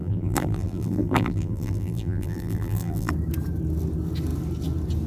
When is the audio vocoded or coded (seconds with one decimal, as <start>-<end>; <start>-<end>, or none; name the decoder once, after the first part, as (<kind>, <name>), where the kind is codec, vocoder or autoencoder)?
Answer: 0.0-3.1 (vocoder, BigVGAN v2)